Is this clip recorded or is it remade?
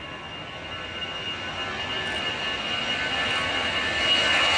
recorded